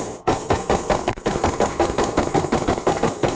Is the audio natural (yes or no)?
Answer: no